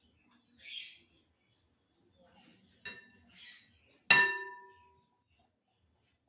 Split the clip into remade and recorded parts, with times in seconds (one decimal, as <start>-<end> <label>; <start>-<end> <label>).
0.0-6.3 recorded